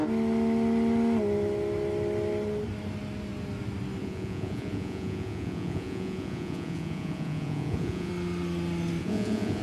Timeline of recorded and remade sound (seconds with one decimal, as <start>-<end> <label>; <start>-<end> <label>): 0.0-4.0 recorded; 4.0-8.1 remade; 8.1-9.0 recorded; 9.0-9.6 remade